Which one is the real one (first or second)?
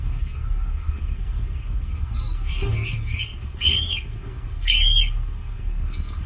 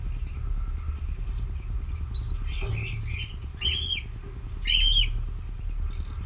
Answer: second